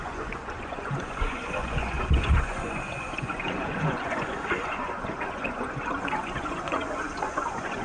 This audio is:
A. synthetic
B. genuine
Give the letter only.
A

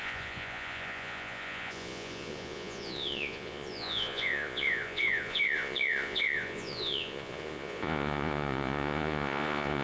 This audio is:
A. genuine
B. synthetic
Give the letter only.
B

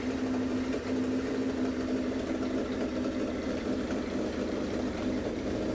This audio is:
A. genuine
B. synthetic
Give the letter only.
A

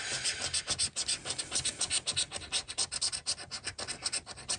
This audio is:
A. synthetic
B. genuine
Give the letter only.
B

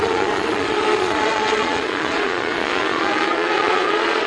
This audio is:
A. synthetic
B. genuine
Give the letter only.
A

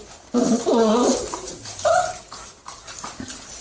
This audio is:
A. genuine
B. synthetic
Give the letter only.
A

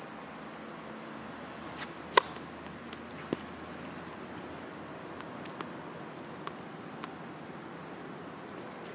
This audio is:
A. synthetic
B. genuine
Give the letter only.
B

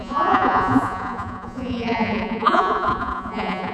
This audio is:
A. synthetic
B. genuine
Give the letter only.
A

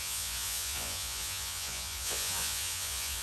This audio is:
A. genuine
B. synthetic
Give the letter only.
B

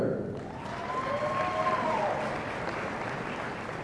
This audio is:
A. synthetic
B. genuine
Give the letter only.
B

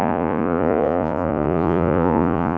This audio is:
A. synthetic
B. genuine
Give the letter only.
A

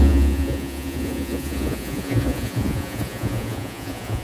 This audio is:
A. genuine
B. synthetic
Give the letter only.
B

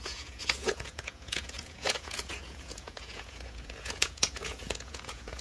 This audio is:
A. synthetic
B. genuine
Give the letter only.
A